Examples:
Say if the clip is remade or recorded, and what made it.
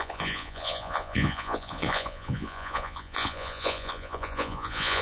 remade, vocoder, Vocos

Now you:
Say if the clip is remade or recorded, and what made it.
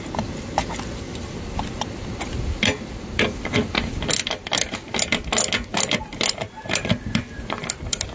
recorded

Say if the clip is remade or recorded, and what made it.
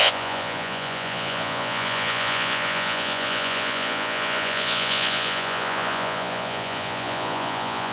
remade, vocoder, Vocos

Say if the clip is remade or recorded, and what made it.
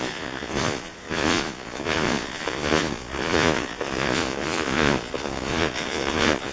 remade, vocoder, Vocos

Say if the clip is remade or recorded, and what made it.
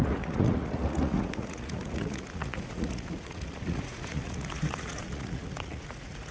remade, vocoder, Vocos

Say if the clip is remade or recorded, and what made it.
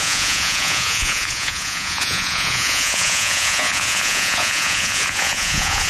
remade, vocoder, Vocos